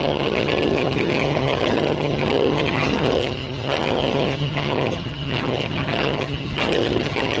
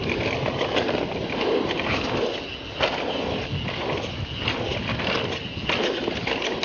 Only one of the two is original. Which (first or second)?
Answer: second